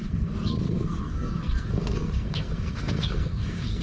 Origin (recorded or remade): remade